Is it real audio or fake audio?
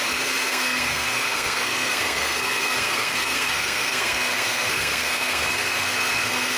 fake